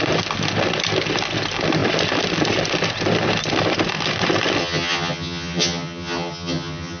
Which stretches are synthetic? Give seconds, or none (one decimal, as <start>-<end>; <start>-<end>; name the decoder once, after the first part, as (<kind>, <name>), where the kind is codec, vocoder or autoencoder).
4.6-7.0 (vocoder, HiFi-GAN)